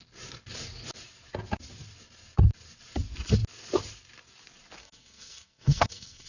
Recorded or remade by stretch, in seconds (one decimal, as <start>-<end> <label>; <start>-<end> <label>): 0.0-4.8 recorded; 4.8-6.3 remade